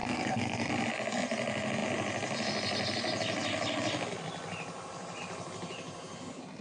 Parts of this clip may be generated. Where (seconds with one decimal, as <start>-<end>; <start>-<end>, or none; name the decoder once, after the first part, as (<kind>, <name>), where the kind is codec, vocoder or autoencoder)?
0.0-0.7 (codec, SNAC)